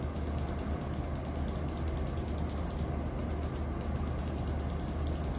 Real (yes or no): yes